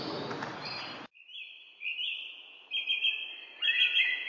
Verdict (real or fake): real